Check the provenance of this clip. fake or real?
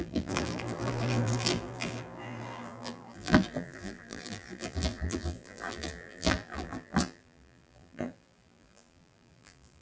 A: fake